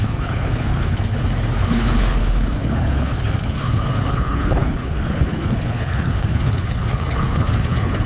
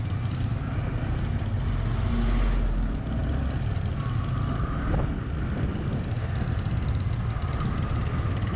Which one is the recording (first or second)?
second